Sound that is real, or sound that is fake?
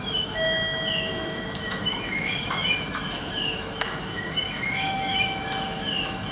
fake